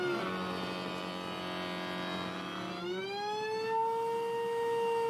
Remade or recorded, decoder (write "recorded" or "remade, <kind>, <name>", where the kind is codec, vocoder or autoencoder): recorded